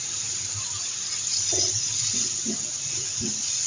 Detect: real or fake real